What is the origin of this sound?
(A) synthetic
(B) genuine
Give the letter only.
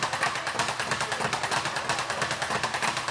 B